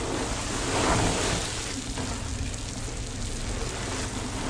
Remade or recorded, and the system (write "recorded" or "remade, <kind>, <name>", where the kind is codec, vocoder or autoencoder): recorded